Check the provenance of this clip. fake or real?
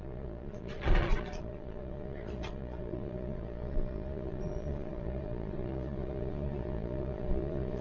fake